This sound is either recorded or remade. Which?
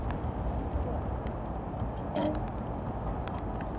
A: recorded